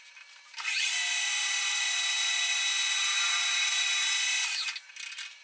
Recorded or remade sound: recorded